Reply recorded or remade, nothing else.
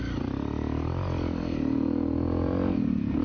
recorded